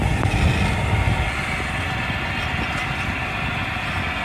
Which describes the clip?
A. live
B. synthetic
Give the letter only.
A